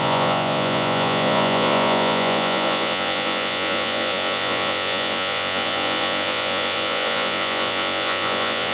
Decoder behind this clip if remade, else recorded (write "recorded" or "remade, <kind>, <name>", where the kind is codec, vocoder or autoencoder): remade, vocoder, Vocos